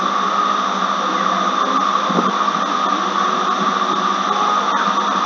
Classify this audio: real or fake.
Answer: real